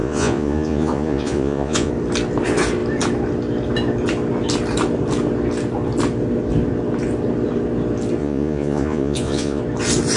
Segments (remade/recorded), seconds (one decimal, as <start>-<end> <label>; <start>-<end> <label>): 0.0-1.9 remade; 1.9-8.2 recorded; 8.2-9.6 remade; 9.6-10.2 recorded